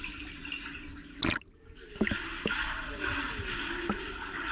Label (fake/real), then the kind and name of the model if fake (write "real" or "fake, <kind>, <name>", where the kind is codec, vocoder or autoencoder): real